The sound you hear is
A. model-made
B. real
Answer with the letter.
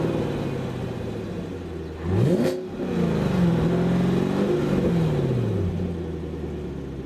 B